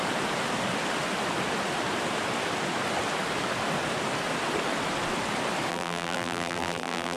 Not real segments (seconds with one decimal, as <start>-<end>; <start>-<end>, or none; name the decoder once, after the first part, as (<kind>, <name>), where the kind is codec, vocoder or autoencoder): 5.7-7.2 (vocoder, BigVGAN v2)